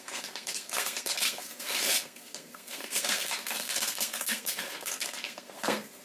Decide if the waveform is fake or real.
fake